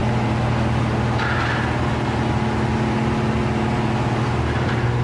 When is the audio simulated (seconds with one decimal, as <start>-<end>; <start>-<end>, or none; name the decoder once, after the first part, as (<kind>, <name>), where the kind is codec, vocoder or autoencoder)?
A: none